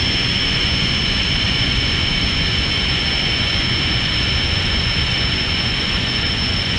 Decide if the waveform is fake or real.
fake